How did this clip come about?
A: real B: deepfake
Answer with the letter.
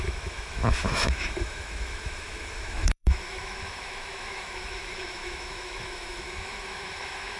B